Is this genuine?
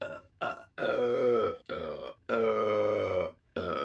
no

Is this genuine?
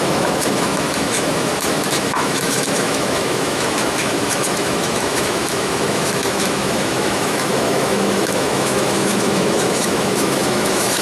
no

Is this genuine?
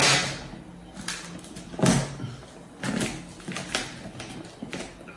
yes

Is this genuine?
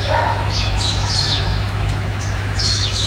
no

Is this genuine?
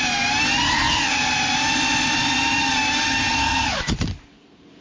yes